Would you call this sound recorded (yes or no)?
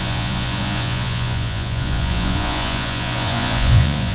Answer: no